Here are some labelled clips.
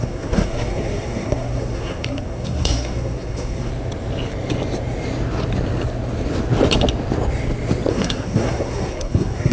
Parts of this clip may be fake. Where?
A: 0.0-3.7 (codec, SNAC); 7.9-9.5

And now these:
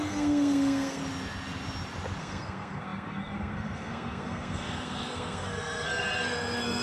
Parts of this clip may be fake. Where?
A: 0.0-1.0 (codec, SNAC); 2.2-6.8

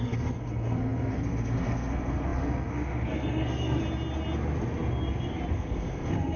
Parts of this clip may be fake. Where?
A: 0.0-3.8 (codec, SNAC); 5.5-6.4

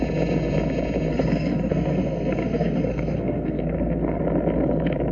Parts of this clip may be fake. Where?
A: 1.1-4.2 (codec, SNAC)

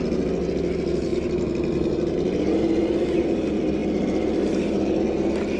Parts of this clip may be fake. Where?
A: none

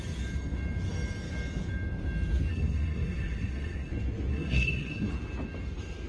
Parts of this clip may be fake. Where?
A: 2.5-3.9 (codec, SNAC); 4.3-5.1